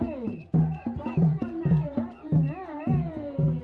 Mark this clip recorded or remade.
remade